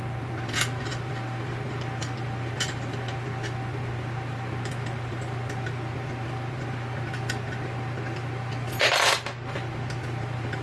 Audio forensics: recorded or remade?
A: recorded